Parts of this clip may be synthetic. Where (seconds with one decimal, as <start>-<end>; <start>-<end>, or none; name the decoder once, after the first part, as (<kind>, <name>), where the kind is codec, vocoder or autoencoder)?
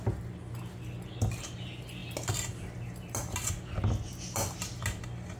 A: none